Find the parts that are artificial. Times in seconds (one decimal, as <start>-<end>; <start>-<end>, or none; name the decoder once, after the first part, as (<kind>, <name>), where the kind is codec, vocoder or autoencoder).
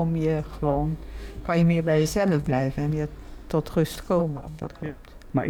0.5-2.9 (codec, DAC); 4.2-4.7